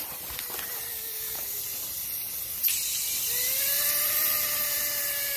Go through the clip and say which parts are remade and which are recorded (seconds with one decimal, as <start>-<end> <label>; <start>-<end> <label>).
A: 0.0-0.9 recorded; 0.9-1.6 remade; 1.6-5.4 recorded